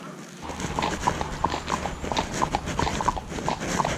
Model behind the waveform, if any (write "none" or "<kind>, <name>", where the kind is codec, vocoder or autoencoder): none